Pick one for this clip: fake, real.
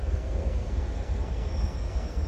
fake